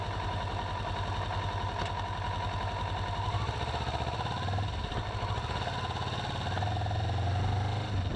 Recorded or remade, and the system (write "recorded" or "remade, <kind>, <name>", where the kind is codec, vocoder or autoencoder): recorded